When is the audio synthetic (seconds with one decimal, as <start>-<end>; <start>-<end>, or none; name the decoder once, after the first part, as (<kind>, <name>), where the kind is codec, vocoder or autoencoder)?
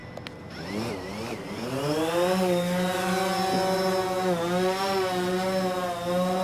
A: none